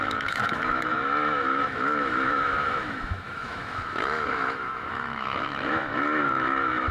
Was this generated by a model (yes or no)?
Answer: yes